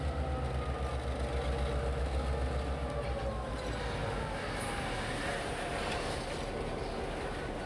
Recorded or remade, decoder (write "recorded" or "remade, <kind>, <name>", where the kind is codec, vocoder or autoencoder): recorded